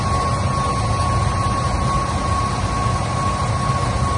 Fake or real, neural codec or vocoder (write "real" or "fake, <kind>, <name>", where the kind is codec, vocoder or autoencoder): real